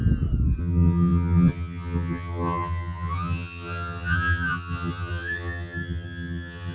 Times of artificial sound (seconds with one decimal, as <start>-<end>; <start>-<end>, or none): 0.6-6.7